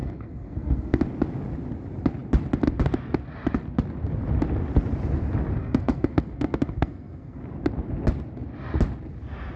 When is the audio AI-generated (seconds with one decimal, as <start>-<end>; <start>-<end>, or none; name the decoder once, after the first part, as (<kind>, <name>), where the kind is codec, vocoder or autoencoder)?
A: 0.0-1.0 (codec, SNAC); 5.6-7.4